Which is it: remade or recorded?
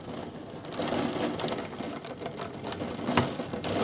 recorded